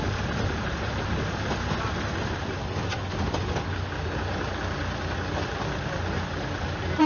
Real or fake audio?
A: real